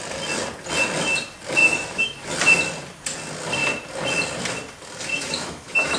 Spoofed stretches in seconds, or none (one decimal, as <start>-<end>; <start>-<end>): 1.6-2.3; 5.1-6.0